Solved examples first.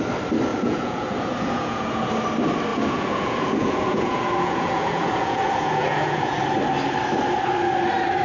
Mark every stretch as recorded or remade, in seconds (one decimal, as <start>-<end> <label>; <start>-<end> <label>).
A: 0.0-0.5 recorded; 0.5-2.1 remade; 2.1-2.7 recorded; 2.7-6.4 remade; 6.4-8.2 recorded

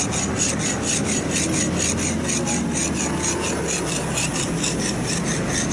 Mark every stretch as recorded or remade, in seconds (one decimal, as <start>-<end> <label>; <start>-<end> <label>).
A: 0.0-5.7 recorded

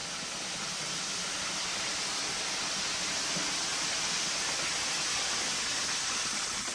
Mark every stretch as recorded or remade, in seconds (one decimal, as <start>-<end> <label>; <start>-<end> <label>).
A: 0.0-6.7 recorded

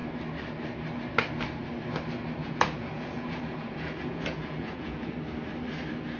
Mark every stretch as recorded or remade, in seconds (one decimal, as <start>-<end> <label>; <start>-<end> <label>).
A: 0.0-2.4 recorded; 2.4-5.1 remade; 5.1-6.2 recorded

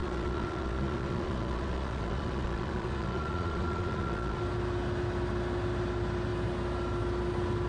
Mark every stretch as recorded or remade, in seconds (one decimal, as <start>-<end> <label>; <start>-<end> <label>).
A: 0.0-4.4 remade; 4.4-7.7 recorded

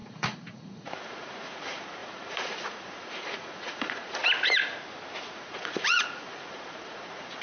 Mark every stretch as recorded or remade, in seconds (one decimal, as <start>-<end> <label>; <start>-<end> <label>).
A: 0.0-4.2 remade; 4.2-5.3 recorded; 5.3-7.4 remade

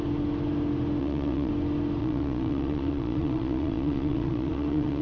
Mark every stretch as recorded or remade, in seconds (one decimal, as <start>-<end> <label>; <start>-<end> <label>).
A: 0.0-1.0 recorded; 1.0-1.5 remade; 1.5-2.0 recorded; 2.0-5.0 remade

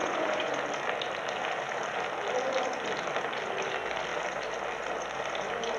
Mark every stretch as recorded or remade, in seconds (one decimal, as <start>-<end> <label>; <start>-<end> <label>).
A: 0.0-0.5 remade; 0.5-5.8 recorded